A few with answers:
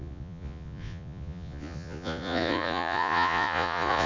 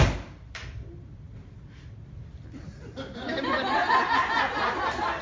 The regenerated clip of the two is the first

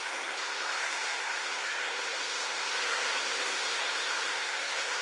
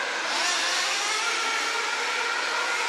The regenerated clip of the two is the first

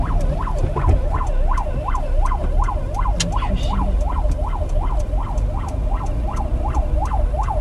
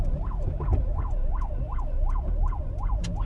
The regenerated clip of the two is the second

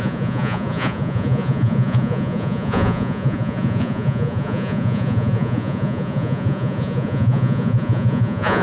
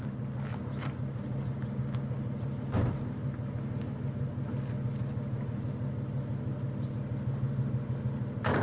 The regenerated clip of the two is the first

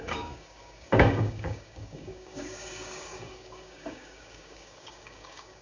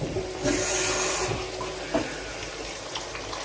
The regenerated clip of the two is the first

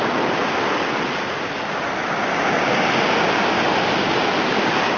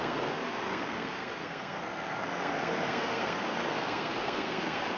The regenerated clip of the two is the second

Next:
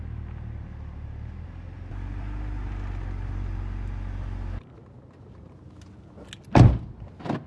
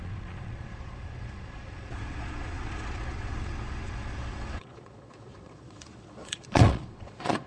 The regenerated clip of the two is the second